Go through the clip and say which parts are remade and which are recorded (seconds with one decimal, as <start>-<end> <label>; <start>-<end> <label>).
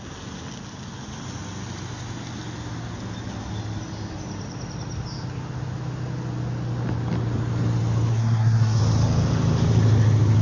0.0-8.1 recorded; 8.1-8.8 remade; 8.8-10.4 recorded